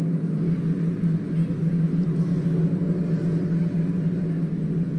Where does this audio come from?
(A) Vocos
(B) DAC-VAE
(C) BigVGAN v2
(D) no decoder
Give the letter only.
D